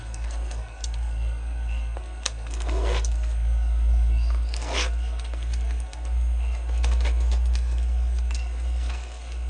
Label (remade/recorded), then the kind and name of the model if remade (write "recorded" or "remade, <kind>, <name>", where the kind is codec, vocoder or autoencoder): remade, codec, SNAC